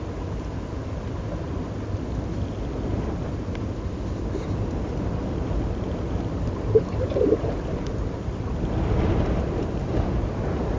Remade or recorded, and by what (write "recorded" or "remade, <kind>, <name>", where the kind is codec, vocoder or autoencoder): recorded